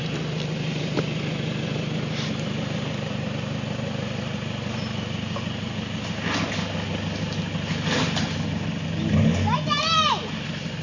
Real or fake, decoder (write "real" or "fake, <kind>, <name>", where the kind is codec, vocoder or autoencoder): real